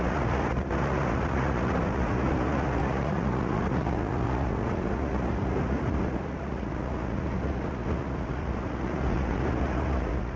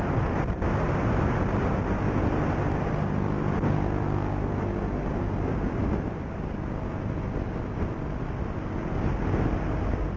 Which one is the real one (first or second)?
second